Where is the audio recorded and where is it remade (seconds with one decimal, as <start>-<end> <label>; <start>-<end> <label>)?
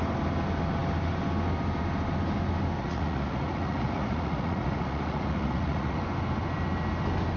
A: 0.0-2.8 recorded; 2.8-6.0 remade; 6.0-7.4 recorded